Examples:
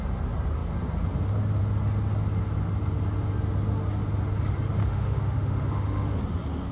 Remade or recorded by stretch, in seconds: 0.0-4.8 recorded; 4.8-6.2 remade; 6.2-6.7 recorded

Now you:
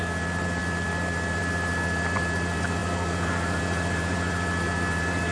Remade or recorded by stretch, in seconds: 0.0-5.3 recorded

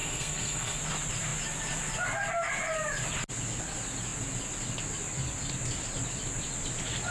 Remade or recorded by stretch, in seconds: 0.0-0.8 remade; 0.8-7.1 recorded

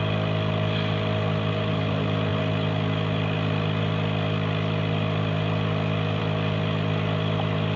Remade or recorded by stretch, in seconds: 0.0-7.8 recorded

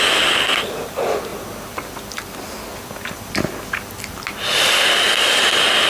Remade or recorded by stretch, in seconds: 0.0-5.9 recorded